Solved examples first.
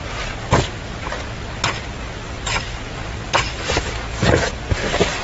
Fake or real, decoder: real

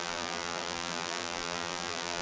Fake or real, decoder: fake, vocoder, BigVGAN v2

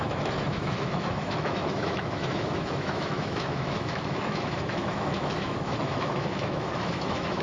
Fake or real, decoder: fake, autoencoder, DAC-VAE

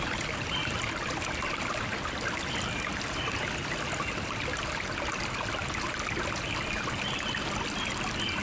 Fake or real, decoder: real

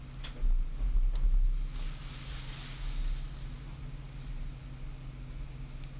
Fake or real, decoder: real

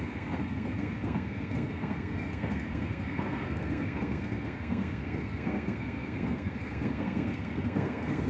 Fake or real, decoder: fake, codec, SNAC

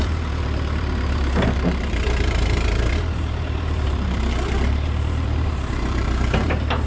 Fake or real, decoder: fake, vocoder, BigVGAN v2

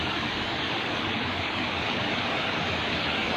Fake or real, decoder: fake, codec, DAC